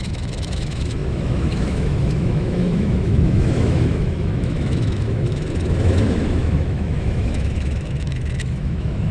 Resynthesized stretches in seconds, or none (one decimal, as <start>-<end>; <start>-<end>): 0.0-9.1